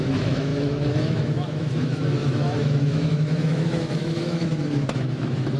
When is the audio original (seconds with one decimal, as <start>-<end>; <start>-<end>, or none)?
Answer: none